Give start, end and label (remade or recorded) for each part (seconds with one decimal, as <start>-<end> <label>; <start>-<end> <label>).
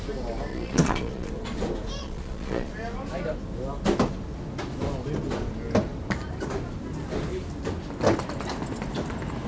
0.0-0.5 recorded; 0.5-1.3 remade; 1.3-2.0 recorded; 2.0-2.7 remade; 2.7-9.5 recorded